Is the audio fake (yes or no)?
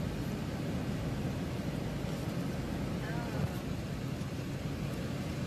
no